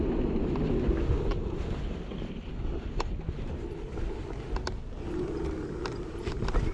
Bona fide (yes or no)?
yes